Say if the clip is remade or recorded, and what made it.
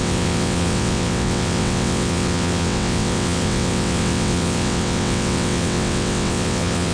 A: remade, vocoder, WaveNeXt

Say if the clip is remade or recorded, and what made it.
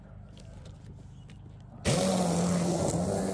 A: recorded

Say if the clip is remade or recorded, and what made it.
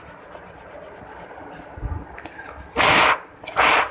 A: recorded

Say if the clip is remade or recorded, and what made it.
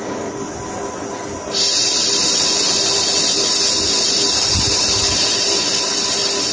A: recorded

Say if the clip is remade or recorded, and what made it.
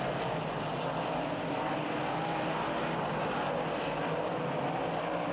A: recorded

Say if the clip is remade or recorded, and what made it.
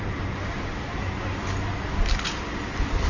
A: recorded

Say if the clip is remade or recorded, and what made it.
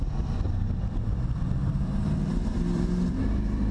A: remade, vocoder, BigVGAN v2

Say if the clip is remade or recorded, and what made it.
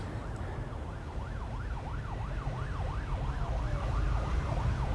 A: recorded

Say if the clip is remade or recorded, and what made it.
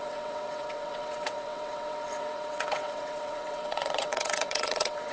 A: remade, vocoder, WaveNeXt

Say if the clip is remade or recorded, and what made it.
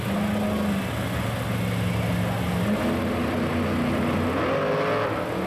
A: recorded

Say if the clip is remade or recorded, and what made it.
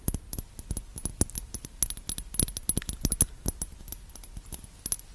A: recorded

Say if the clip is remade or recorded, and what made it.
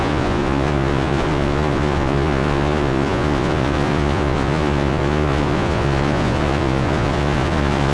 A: remade, vocoder, Vocos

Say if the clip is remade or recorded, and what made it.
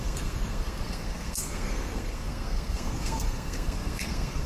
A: remade, codec, SNAC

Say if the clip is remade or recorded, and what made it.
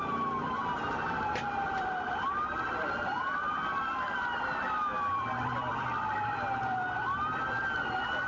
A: remade, vocoder, BigVGAN v2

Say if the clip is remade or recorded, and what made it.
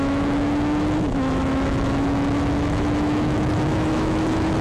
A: remade, autoencoder, DAC-VAE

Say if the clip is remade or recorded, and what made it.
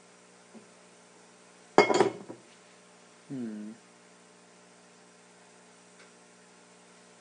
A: recorded